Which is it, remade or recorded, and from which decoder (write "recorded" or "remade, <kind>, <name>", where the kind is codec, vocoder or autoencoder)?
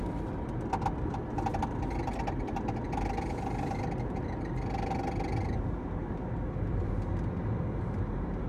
recorded